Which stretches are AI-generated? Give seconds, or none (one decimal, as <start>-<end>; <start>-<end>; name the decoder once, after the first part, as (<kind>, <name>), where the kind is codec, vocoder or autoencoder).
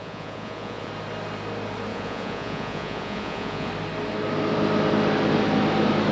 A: 0.0-0.9 (vocoder, Vocos); 1.9-3.7